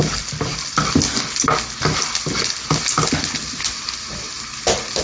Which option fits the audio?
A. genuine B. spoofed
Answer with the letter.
A